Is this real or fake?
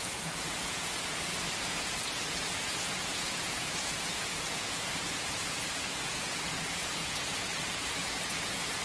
fake